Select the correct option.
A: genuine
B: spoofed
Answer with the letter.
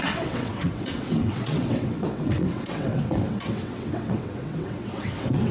B